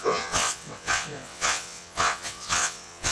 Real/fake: fake